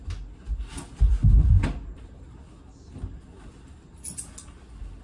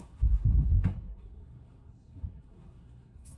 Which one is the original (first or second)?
first